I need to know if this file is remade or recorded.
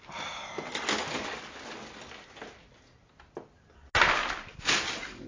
recorded